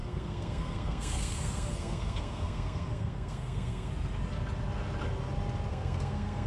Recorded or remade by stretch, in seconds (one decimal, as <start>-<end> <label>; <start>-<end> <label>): 0.0-3.9 remade; 3.9-5.7 recorded; 5.7-6.5 remade